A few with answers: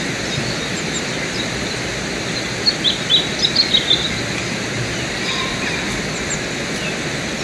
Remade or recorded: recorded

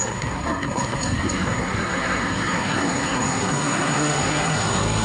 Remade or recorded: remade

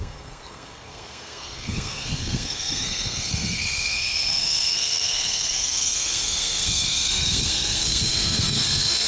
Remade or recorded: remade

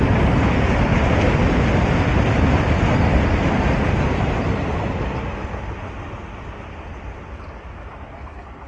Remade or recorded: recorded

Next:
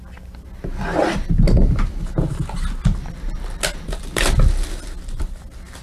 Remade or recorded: recorded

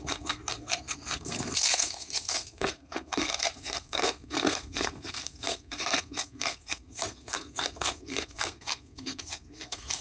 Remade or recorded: remade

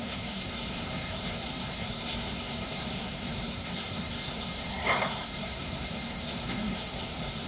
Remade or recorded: remade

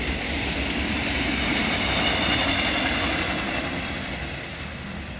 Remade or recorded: recorded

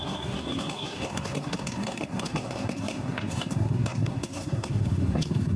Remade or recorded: remade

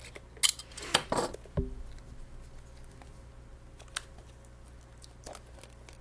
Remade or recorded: recorded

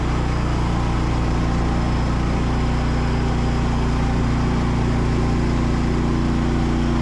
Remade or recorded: recorded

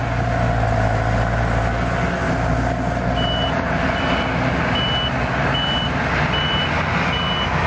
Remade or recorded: recorded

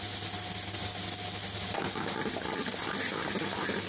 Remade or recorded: recorded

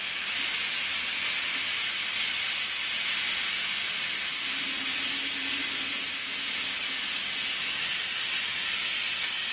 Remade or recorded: recorded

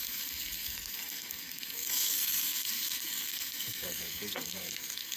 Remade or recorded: remade